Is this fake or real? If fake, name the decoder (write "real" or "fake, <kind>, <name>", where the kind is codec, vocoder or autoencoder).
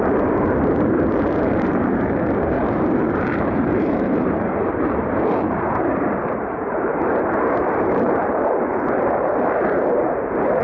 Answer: fake, vocoder, BigVGAN v2